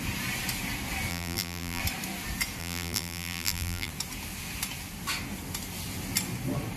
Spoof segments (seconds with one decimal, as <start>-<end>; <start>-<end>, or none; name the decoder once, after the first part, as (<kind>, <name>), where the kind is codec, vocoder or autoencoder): 1.1-1.8 (vocoder, BigVGAN v2); 2.6-3.9